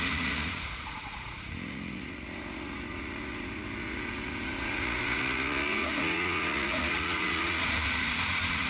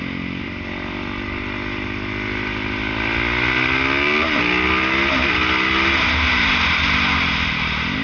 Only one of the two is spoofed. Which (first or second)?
first